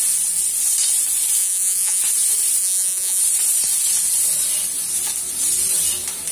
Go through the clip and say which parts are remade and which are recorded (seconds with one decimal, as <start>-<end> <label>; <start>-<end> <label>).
0.0-1.4 recorded; 1.4-2.0 remade; 2.0-2.6 recorded; 2.6-3.2 remade; 3.2-6.3 recorded